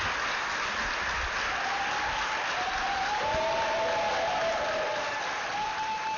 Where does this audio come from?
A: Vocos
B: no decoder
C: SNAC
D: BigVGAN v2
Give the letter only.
B